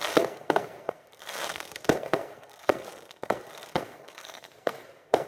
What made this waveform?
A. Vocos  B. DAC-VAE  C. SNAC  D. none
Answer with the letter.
C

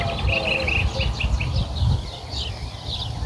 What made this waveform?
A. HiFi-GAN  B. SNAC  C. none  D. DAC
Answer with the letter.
C